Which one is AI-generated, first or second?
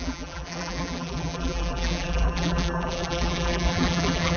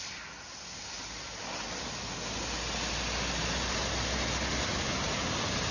first